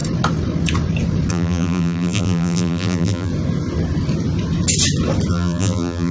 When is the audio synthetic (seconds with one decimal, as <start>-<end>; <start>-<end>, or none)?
1.3-3.3; 5.3-6.1